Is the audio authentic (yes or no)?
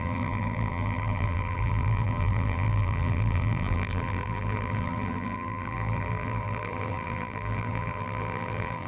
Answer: no